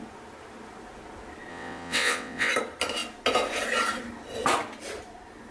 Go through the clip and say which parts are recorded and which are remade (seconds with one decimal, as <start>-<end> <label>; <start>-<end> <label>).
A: 0.0-1.5 recorded; 1.5-2.5 remade; 2.5-5.5 recorded